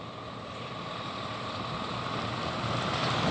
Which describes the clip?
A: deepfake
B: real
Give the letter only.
B